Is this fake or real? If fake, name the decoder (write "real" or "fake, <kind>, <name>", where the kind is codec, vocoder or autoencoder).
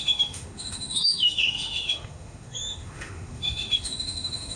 fake, autoencoder, DAC-VAE